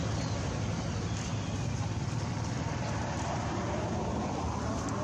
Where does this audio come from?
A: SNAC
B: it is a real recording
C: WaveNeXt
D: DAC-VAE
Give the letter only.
B